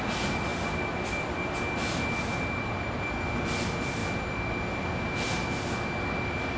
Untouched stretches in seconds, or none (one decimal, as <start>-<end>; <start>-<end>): 0.0-6.6